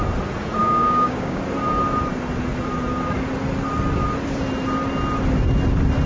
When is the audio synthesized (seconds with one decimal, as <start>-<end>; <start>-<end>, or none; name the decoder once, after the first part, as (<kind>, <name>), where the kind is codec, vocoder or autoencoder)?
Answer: 0.6-1.4 (codec, DAC)